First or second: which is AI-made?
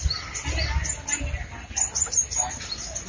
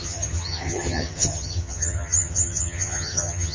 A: second